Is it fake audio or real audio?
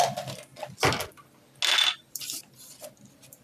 real